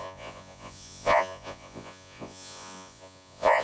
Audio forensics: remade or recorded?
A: remade